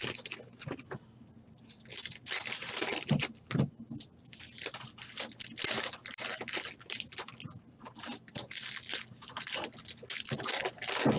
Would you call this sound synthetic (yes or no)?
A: no